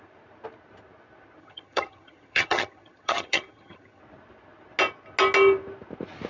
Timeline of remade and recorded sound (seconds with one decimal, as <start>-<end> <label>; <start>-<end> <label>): 0.0-1.4 recorded; 1.4-4.0 remade; 4.0-6.3 recorded